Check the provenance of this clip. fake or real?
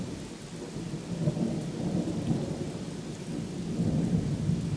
real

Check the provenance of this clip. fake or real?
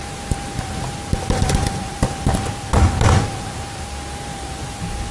real